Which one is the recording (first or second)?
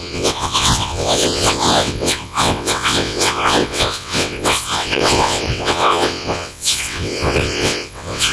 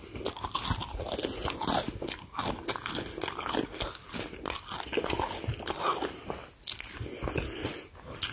second